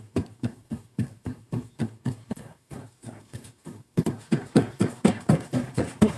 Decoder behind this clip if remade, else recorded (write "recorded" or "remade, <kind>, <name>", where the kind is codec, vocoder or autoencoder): remade, codec, SNAC